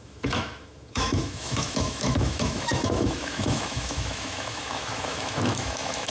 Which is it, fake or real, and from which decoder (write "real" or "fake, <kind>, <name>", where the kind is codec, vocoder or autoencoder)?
fake, autoencoder, DAC-VAE